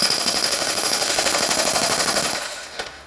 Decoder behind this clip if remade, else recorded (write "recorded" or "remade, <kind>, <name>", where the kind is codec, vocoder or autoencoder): remade, autoencoder, DAC-VAE